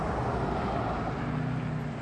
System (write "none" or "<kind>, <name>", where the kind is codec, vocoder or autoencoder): none